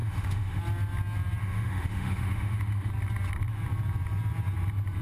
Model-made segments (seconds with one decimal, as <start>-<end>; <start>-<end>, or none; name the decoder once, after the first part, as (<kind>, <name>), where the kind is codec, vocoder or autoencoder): 0.0-0.6 (autoencoder, DAC-VAE); 1.4-2.9